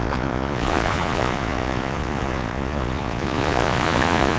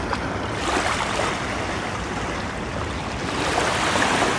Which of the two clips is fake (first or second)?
first